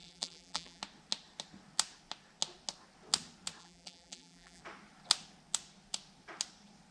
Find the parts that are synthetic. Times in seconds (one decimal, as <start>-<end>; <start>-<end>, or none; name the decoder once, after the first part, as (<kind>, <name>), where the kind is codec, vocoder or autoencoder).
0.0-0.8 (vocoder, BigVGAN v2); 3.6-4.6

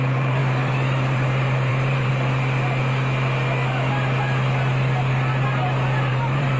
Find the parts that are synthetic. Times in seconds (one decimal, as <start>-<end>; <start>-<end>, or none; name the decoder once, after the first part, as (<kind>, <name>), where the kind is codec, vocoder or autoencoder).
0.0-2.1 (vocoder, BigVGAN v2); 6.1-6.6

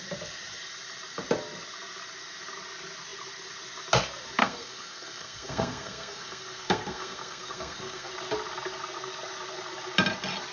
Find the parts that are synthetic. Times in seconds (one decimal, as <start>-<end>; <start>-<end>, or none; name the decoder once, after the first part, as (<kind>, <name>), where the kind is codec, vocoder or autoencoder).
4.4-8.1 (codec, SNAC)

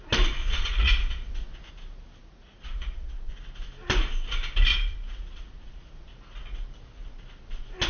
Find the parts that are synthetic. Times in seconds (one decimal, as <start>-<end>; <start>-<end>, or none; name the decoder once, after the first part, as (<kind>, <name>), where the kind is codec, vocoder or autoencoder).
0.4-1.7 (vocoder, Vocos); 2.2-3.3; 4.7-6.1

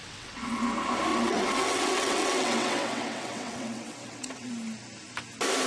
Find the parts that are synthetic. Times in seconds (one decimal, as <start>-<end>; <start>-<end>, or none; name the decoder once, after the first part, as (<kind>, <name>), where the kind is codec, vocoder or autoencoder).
0.0-0.6 (vocoder, WaveNeXt); 1.1-4.5

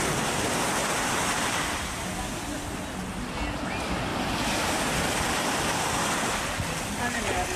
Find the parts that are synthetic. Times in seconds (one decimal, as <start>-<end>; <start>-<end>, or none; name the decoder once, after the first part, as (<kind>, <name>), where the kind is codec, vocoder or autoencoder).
none

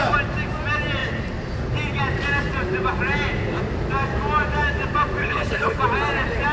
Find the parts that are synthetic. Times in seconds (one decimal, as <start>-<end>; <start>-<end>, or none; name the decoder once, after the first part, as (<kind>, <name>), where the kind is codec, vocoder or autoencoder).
5.2-5.8 (codec, HILCodec)